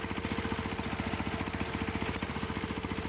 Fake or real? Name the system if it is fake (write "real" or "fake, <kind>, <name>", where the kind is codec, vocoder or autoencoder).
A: real